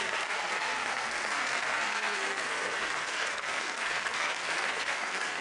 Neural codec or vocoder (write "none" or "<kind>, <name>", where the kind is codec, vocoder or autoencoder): codec, SNAC